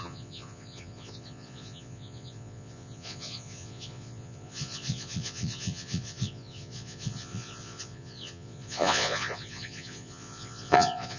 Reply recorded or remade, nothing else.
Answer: remade